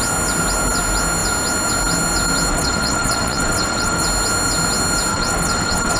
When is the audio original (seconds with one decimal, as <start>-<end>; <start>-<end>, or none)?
0.0-2.5; 4.0-5.1